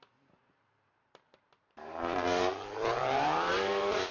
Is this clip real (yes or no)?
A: no